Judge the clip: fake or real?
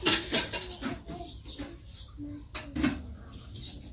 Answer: real